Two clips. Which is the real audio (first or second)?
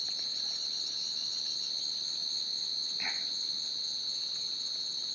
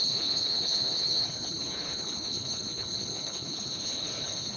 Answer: first